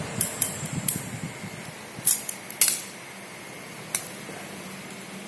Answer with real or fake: real